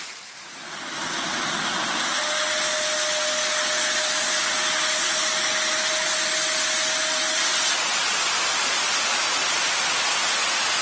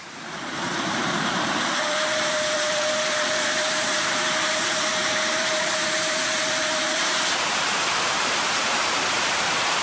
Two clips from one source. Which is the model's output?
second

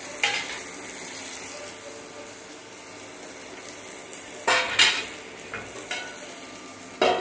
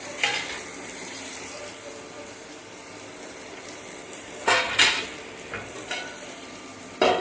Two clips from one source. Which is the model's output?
second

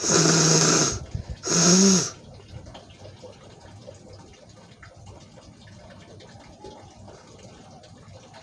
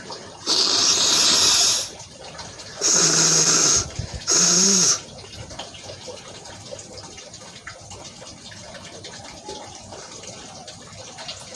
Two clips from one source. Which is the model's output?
second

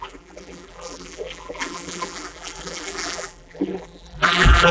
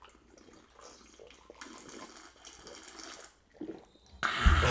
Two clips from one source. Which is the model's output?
first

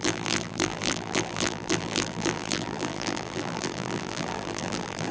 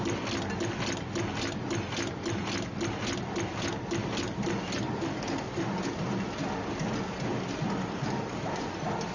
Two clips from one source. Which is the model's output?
first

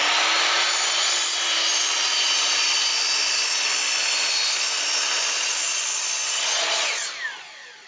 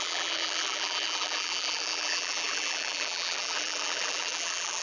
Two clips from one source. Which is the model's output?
second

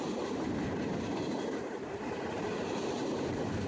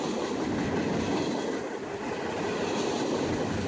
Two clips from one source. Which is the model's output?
first